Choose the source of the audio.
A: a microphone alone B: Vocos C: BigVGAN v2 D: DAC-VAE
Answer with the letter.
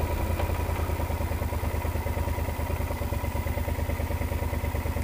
A